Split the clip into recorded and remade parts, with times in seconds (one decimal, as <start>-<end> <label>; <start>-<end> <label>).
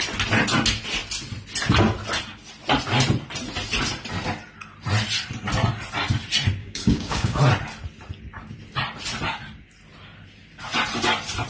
0.0-6.6 recorded; 6.6-7.4 remade; 7.4-11.5 recorded